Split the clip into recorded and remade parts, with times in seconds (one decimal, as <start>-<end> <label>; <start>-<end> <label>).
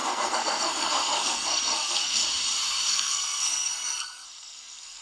0.0-2.2 remade; 2.2-2.9 recorded; 2.9-5.0 remade